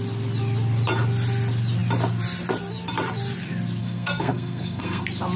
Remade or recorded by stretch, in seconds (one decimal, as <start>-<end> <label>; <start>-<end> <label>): 0.0-3.8 recorded; 3.8-5.0 remade; 5.0-5.4 recorded